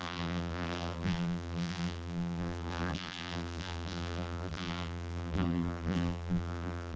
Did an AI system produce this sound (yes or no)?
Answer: yes